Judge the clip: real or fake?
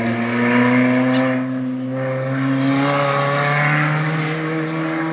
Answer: real